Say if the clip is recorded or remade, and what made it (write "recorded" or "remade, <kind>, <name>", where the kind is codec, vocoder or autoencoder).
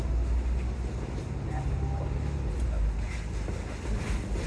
recorded